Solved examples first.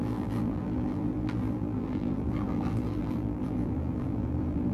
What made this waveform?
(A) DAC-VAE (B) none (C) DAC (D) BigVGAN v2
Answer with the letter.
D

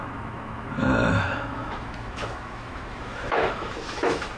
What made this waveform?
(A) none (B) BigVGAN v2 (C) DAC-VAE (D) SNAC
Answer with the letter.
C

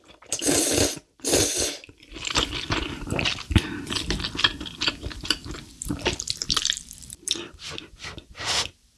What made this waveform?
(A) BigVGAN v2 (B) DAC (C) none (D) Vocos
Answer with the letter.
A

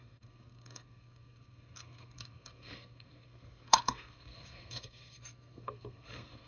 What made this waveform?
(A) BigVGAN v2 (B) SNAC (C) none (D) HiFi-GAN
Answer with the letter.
B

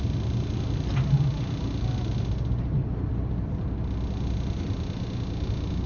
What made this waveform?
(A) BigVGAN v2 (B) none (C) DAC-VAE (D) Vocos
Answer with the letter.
B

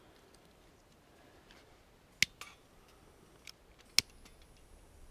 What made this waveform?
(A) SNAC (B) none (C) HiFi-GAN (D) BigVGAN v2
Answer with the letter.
B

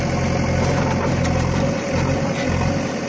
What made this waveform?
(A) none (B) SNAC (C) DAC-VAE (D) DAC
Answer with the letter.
A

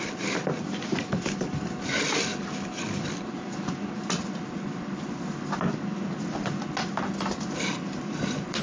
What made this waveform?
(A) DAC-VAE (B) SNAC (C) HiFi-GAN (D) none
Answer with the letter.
D